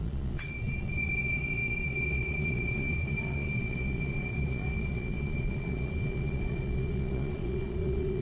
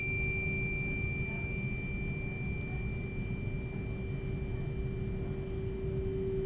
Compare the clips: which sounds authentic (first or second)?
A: second